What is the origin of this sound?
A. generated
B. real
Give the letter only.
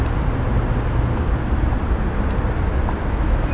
B